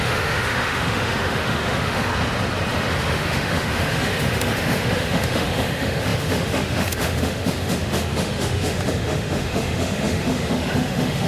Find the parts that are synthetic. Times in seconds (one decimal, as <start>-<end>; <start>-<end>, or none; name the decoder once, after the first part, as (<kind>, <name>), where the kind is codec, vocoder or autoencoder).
0.0-2.1 (autoencoder, DAC-VAE); 2.9-11.3